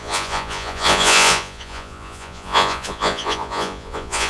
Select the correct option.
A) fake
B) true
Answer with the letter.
A